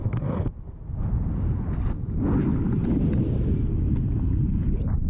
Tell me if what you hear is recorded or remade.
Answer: recorded